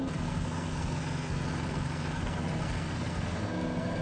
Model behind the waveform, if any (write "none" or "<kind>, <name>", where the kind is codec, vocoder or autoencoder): codec, SNAC